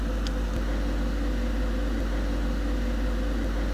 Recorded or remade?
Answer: recorded